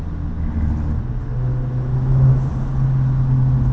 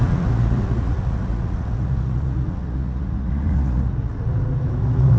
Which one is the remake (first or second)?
second